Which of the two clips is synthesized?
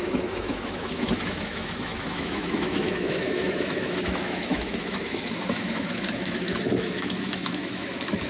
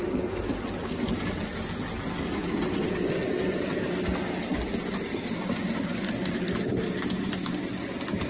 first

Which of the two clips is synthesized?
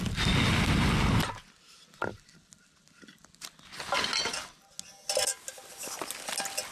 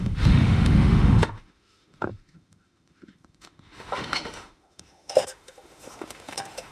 second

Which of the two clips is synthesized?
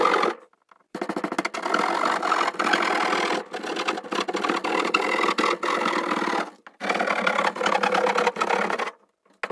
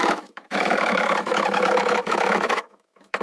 second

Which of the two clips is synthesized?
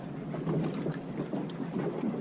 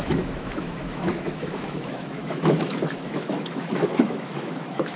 second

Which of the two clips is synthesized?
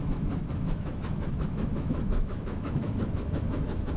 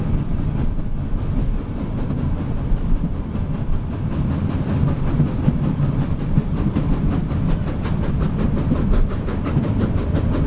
first